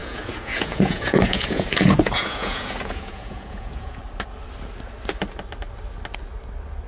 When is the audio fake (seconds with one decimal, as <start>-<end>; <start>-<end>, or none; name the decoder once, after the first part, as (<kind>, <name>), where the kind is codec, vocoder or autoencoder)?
0.0-4.0 (vocoder, Vocos)